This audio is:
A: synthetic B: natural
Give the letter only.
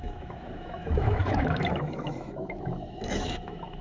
A